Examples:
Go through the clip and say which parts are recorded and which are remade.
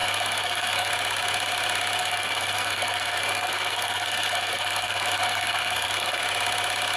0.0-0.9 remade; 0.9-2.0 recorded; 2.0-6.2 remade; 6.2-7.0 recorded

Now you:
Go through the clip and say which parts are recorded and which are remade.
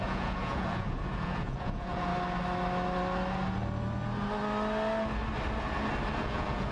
0.0-2.1 remade; 2.1-6.1 recorded; 6.1-6.7 remade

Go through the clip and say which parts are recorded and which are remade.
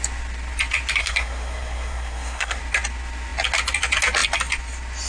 0.0-1.0 recorded; 1.0-2.6 remade; 2.6-5.1 recorded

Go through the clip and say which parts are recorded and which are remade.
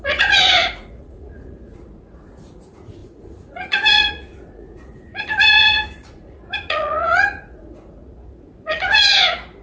0.0-9.6 remade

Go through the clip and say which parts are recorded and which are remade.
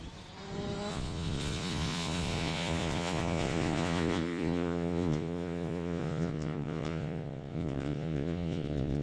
0.0-0.9 recorded; 0.9-9.0 remade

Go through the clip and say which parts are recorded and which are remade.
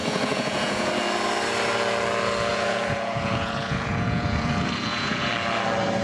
0.0-0.9 remade; 0.9-2.5 recorded; 2.5-5.3 remade; 5.3-6.0 recorded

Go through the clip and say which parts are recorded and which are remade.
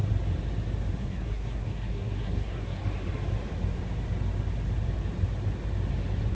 0.0-1.0 recorded; 1.0-2.8 remade; 2.8-6.3 recorded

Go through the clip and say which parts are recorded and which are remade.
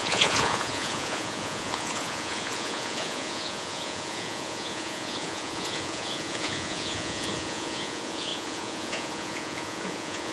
0.0-10.3 remade